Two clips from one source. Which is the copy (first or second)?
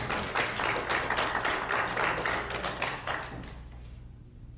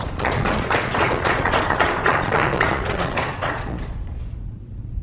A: second